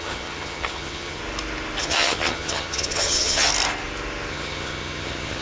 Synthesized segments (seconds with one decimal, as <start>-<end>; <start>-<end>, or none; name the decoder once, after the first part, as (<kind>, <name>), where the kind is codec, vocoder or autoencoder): 0.0-1.2 (vocoder, HiFi-GAN); 1.8-3.5; 4.3-5.4